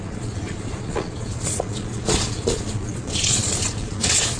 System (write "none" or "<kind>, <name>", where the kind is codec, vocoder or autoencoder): vocoder, Vocos